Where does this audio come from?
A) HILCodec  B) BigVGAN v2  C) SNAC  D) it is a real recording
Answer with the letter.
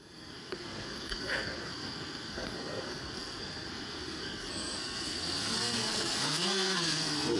C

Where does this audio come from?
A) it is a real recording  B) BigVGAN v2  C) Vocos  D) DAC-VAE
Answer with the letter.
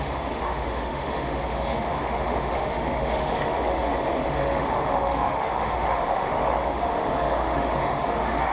D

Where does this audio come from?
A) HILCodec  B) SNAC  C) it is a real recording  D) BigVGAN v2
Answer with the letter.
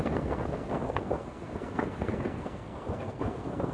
B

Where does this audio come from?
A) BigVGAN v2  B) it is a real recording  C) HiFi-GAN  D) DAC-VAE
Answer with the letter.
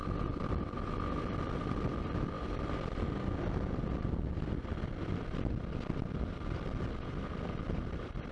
B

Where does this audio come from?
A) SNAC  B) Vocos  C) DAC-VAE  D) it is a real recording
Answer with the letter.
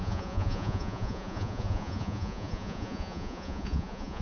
B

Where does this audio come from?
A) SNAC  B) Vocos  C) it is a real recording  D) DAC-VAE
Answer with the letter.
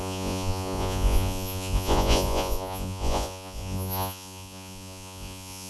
B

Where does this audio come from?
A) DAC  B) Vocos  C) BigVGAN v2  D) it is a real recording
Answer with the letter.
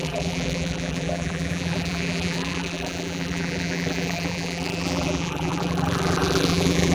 C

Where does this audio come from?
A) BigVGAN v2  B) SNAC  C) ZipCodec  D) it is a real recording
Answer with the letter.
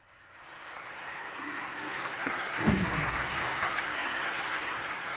B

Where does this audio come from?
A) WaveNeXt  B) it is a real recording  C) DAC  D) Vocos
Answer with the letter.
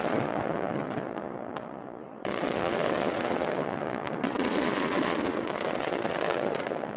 D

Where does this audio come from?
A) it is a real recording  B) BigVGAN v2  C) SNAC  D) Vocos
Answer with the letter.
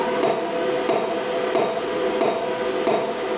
A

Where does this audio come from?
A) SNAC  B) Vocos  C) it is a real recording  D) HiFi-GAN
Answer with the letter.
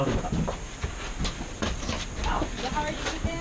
C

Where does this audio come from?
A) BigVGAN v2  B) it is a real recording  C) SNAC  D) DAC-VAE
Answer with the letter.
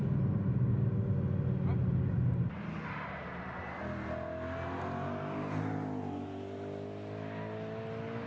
B